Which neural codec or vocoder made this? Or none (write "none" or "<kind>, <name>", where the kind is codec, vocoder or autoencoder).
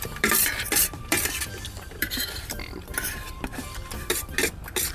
vocoder, BigVGAN v2